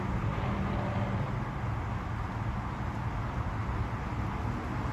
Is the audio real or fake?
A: real